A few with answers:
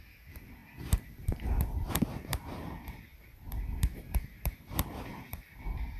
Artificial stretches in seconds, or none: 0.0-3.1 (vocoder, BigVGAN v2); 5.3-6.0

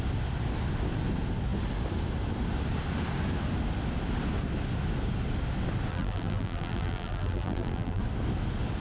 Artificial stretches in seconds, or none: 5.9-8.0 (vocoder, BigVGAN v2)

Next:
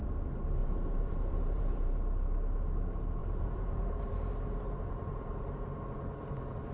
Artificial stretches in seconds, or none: 0.6-2.0 (vocoder, BigVGAN v2); 3.2-5.6